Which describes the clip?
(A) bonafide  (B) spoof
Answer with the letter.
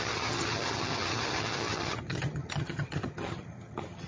B